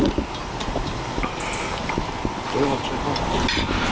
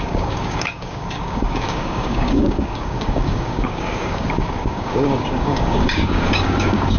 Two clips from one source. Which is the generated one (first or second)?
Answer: second